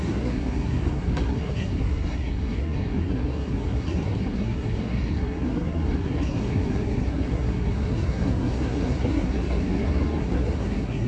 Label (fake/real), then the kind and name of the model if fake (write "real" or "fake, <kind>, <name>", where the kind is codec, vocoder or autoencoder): fake, codec, SNAC